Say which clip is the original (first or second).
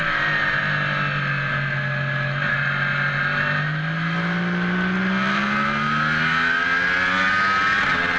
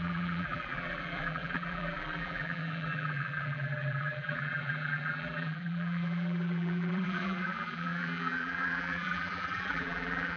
first